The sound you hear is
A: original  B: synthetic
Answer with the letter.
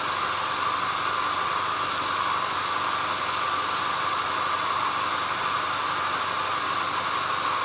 A